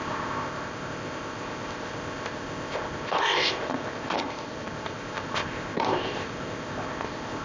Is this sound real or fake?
fake